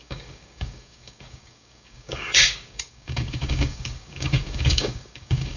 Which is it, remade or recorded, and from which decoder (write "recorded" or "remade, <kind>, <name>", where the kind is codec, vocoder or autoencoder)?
remade, codec, DAC